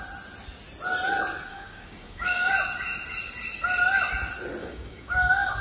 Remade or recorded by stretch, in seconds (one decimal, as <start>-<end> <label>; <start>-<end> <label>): 0.0-1.5 recorded; 1.5-2.5 remade; 2.5-4.6 recorded; 4.6-5.6 remade